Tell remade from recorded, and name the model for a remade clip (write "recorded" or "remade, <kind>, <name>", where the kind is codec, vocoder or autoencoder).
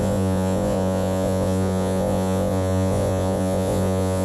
remade, vocoder, Vocos